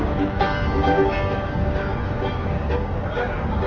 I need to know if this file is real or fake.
fake